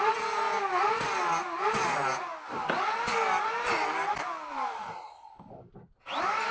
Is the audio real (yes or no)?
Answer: yes